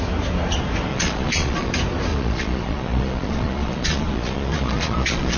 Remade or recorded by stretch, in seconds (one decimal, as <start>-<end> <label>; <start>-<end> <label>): 0.0-0.9 recorded; 0.9-1.7 remade; 1.7-2.1 recorded; 2.1-5.4 remade